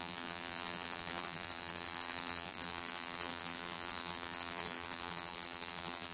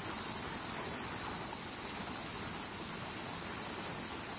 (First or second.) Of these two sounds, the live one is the second